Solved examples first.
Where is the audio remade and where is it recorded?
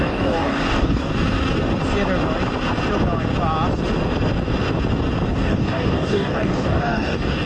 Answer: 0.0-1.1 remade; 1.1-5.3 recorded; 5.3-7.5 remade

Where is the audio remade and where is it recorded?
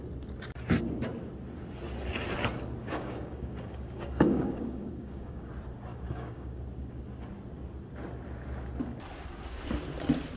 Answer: 0.0-2.8 recorded; 2.8-5.5 remade; 5.5-5.9 recorded; 5.9-6.6 remade; 6.6-10.4 recorded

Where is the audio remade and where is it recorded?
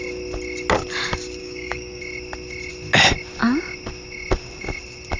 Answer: 0.0-1.4 recorded; 1.4-2.0 remade; 2.0-5.2 recorded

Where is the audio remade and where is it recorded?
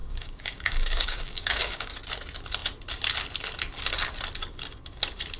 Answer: 0.0-1.9 remade; 1.9-5.4 recorded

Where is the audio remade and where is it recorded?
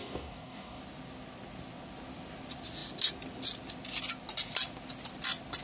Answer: 0.0-0.8 remade; 0.8-5.6 recorded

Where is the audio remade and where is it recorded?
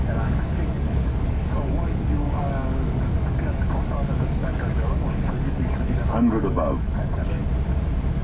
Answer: 0.0-7.4 remade; 7.4-8.2 recorded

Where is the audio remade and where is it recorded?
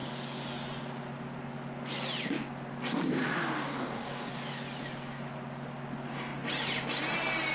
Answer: 0.0-3.7 recorded; 3.7-4.3 remade; 4.3-7.5 recorded